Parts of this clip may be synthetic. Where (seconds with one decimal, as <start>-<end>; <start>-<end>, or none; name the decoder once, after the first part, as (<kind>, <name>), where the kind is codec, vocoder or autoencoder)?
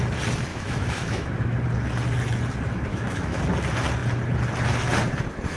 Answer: 0.5-1.6 (autoencoder, DAC-VAE); 2.9-3.4